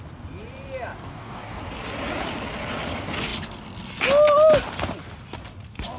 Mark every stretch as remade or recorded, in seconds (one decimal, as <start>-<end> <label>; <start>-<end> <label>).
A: 0.0-1.1 recorded; 1.1-1.6 remade; 1.6-6.0 recorded